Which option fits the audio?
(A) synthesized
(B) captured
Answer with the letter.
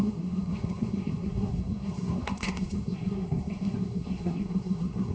A